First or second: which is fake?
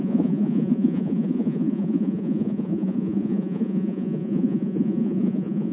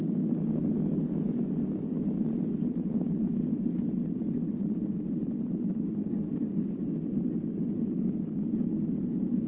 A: first